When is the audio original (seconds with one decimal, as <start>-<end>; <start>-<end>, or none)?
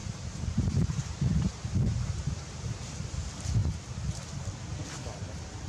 2.9-5.7